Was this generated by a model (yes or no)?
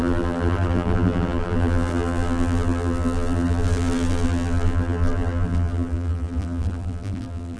yes